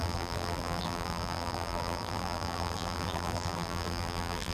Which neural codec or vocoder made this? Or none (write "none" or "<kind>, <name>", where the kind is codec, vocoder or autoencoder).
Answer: vocoder, BigVGAN v2